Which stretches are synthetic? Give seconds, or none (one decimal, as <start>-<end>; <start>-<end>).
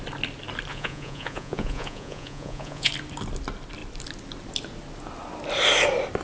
0.7-2.9